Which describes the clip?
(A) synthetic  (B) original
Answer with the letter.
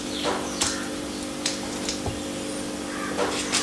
B